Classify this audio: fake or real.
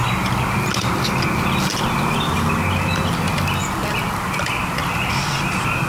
real